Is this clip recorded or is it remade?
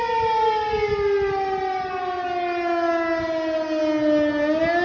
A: recorded